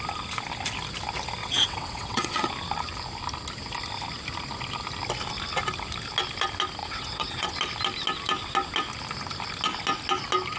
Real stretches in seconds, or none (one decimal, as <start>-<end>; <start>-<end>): 0.0-1.4; 2.5-6.8; 7.5-10.6